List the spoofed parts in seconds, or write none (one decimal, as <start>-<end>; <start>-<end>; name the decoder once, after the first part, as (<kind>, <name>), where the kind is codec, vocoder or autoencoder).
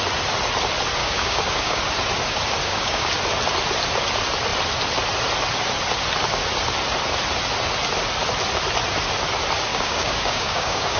1.0-1.8 (codec, DAC); 2.6-3.1; 9.7-11.0